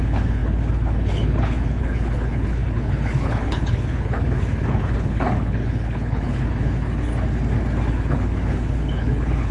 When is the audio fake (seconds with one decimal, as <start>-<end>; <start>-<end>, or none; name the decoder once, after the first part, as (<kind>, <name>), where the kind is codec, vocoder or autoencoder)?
0.0-7.1 (codec, HILCodec); 7.9-9.5